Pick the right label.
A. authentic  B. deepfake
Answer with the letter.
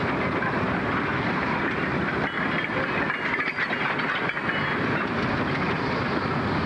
A